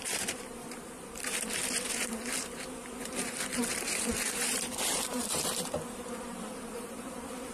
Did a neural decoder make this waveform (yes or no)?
yes